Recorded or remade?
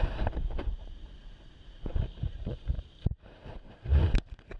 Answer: remade